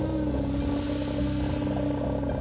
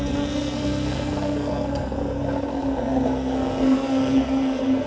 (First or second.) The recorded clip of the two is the first